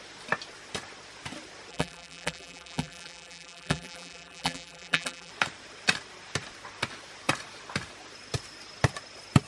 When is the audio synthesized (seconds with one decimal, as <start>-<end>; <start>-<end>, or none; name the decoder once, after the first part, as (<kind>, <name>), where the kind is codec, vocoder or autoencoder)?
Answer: 1.7-5.3 (vocoder, BigVGAN v2)